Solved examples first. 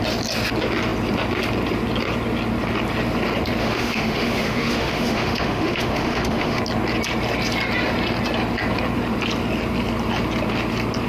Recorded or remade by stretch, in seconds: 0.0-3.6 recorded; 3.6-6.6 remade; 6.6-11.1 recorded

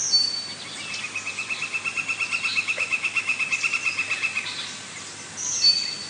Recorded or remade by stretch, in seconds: 0.0-2.5 recorded; 2.5-3.4 remade; 3.4-6.1 recorded

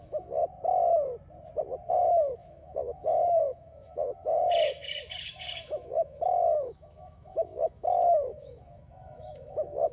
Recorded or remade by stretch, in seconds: 0.0-0.4 remade; 0.4-1.9 recorded; 1.9-9.9 remade